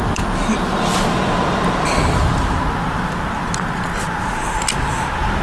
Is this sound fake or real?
real